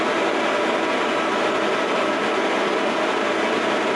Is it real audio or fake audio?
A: real